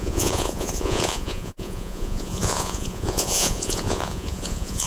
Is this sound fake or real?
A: fake